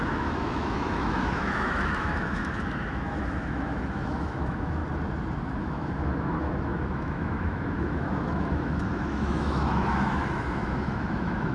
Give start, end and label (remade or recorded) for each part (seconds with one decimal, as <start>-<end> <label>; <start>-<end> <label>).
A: 0.0-4.8 remade; 4.8-5.6 recorded; 5.6-11.5 remade